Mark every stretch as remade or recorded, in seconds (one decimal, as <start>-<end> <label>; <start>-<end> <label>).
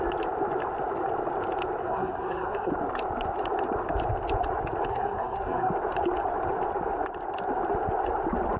0.0-1.8 recorded; 1.8-2.7 remade; 2.7-4.9 recorded; 4.9-5.7 remade; 5.7-8.6 recorded